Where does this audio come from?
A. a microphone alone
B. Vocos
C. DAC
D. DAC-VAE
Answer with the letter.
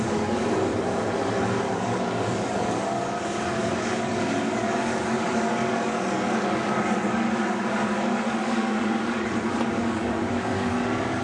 C